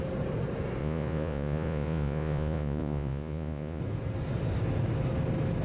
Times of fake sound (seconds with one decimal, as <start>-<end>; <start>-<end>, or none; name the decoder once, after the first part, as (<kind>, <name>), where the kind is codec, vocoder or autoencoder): 0.8-3.8 (vocoder, Vocos)